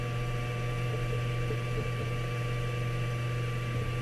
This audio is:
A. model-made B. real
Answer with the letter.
A